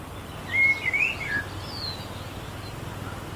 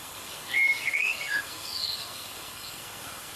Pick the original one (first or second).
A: first